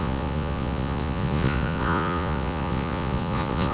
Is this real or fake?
fake